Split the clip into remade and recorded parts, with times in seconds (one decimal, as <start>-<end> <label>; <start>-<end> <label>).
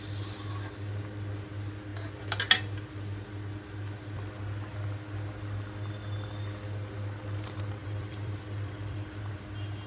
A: 0.0-7.8 recorded; 7.8-9.2 remade; 9.2-9.9 recorded